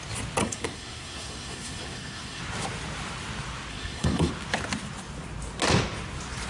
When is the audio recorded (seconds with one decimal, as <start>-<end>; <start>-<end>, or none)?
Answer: 0.0-0.4; 2.4-3.7; 4.3-6.5